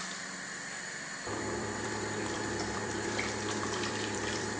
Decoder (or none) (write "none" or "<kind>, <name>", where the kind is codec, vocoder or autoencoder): vocoder, BigVGAN v2